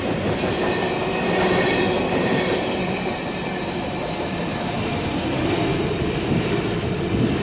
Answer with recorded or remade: recorded